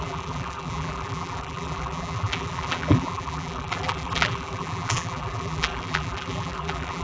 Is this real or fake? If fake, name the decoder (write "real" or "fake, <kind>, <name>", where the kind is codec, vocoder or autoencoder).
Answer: fake, vocoder, BigVGAN v2